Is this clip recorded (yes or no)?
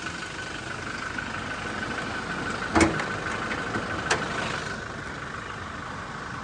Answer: yes